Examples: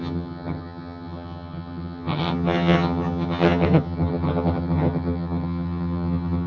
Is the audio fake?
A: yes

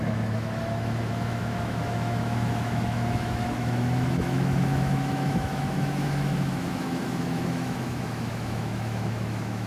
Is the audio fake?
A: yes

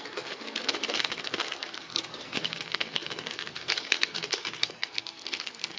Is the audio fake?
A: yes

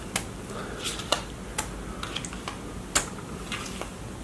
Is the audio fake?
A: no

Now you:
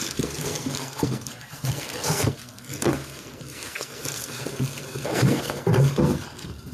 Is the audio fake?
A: yes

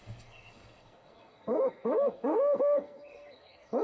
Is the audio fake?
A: yes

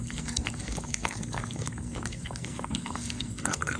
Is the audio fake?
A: yes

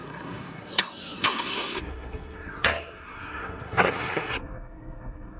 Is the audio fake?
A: yes